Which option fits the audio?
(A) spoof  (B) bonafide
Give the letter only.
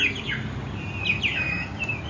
B